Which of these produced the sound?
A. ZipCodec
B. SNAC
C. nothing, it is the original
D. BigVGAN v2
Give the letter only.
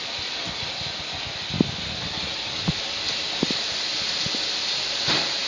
C